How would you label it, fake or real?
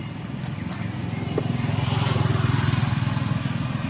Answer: real